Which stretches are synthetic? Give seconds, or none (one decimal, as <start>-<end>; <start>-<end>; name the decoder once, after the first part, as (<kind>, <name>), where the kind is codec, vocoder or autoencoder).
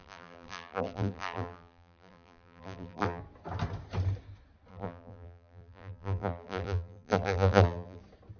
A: 0.0-3.2 (vocoder, BigVGAN v2); 4.7-8.0